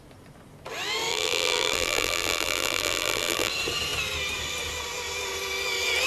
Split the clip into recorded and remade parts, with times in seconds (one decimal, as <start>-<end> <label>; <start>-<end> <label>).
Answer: 0.0-1.1 recorded; 1.1-3.5 remade; 3.5-6.1 recorded